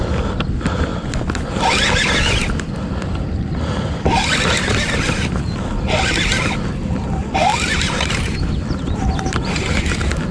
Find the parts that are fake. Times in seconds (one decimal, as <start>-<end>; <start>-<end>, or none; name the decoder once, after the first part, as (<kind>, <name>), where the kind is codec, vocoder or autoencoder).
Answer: 7.5-9.5 (vocoder, BigVGAN v2)